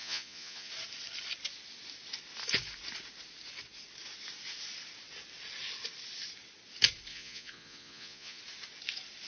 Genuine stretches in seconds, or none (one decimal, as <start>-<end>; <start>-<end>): 0.7-7.1; 8.4-9.3